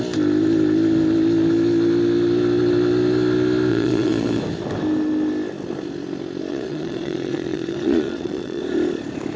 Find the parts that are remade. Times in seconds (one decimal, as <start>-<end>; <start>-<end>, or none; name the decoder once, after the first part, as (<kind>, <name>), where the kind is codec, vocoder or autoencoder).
3.7-4.4 (vocoder, Vocos); 6.5-8.6